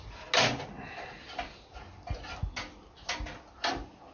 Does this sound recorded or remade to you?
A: recorded